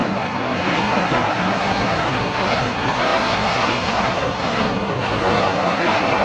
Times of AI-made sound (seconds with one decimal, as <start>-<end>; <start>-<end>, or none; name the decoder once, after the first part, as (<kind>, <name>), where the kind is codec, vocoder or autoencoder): 0.0-6.2 (codec, SNAC)

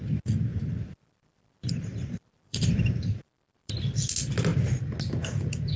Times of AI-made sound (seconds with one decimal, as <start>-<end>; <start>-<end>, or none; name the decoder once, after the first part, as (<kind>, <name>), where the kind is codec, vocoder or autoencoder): 0.5-4.0 (vocoder, BigVGAN v2)

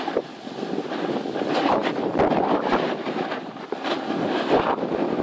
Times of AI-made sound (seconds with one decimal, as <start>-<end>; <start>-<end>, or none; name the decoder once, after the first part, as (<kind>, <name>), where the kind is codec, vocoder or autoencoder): none

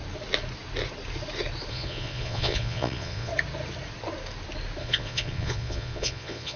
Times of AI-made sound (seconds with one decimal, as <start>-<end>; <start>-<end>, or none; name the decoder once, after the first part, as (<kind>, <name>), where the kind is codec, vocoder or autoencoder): 1.7-3.3 (vocoder, Vocos); 4.8-6.6

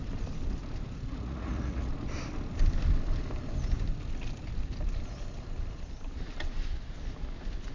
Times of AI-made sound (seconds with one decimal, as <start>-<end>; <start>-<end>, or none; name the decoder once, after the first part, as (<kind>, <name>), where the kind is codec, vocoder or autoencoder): 1.1-1.9 (vocoder, Vocos)